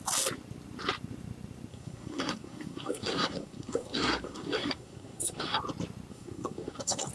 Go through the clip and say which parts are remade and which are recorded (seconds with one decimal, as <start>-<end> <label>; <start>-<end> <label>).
0.0-1.7 recorded; 1.7-5.6 remade; 5.6-6.1 recorded; 6.1-7.1 remade